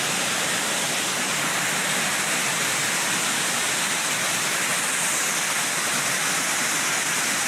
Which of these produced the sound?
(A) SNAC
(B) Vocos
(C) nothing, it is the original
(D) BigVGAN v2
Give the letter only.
C